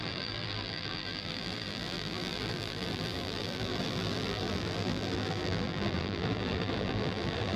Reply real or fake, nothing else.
fake